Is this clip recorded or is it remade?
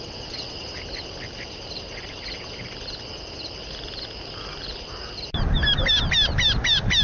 recorded